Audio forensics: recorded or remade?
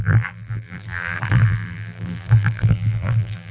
remade